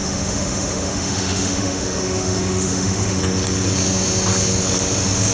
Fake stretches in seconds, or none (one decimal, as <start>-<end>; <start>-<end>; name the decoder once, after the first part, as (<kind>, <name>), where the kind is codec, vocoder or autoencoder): 0.0-3.2 (autoencoder, DAC-VAE)